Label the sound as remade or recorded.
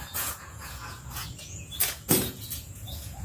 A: remade